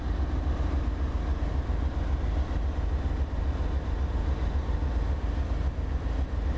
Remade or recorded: recorded